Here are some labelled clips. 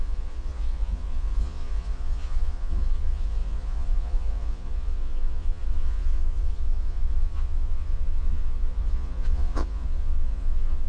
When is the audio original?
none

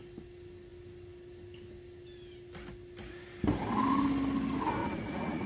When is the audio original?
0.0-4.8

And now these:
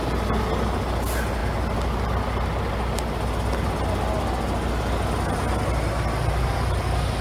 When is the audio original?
0.0-7.2

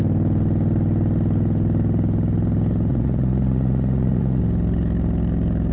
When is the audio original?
0.0-2.9; 4.4-5.7